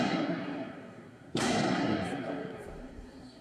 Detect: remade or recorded remade